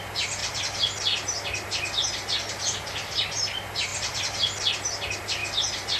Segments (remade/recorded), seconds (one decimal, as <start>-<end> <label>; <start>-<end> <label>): 0.0-6.0 recorded